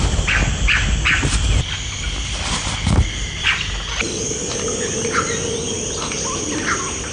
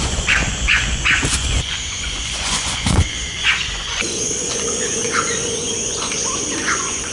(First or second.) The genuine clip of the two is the first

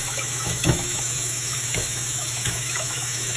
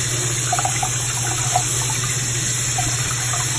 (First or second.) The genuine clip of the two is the second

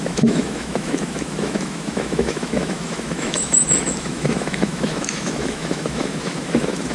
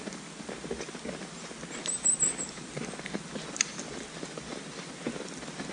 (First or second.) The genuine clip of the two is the second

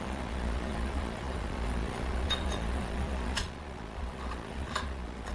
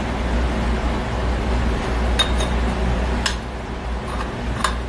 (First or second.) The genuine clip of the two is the second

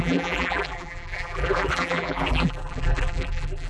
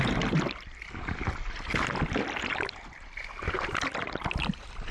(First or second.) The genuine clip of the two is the second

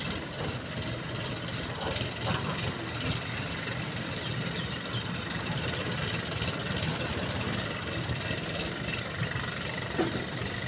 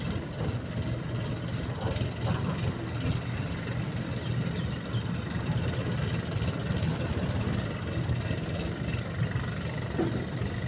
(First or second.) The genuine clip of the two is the second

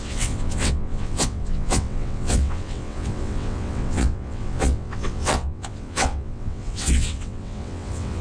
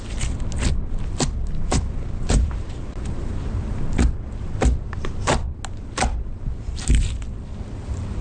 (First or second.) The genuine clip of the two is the second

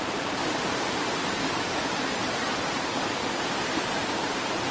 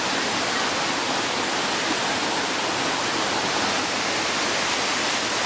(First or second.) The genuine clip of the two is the second